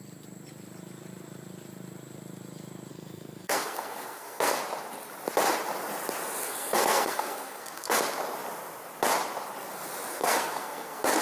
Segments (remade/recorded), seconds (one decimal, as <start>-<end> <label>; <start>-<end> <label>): 0.0-2.9 recorded; 2.9-4.6 remade; 4.6-6.4 recorded; 6.4-8.0 remade; 8.0-10.1 recorded; 10.1-11.2 remade